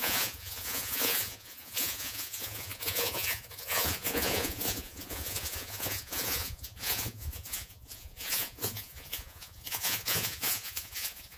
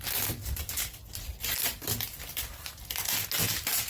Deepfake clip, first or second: first